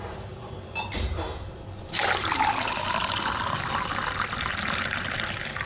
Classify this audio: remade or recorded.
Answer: remade